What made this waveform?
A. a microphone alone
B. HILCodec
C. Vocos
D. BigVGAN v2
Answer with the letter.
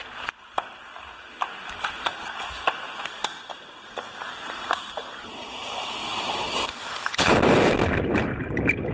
A